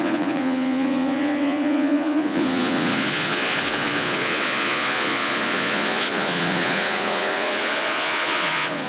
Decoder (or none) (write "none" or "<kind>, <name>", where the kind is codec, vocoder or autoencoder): vocoder, Vocos